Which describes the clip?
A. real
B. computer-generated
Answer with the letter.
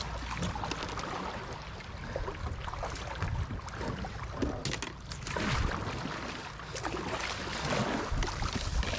A